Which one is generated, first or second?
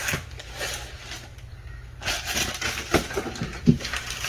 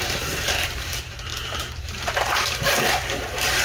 second